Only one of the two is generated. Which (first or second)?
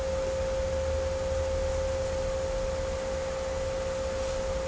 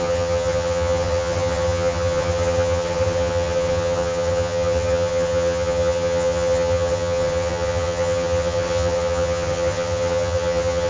second